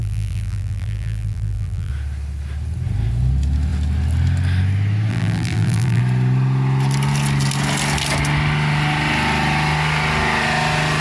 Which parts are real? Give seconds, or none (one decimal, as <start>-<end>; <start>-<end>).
1.9-5.1; 6.0-11.0